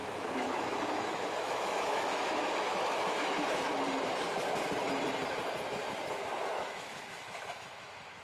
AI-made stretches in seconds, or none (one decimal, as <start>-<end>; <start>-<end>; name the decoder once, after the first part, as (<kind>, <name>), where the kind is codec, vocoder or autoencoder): 0.0-3.7 (autoencoder, DAC-VAE); 6.5-8.2